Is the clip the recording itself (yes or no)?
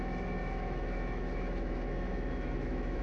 no